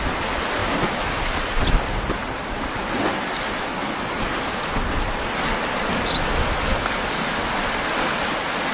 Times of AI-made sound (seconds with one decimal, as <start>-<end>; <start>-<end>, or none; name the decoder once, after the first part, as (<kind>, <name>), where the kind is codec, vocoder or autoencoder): 0.6-1.4 (vocoder, BigVGAN v2)